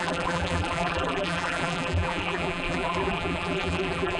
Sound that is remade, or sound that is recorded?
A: remade